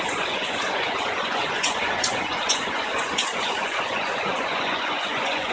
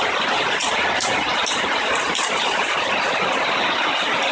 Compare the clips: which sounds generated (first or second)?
first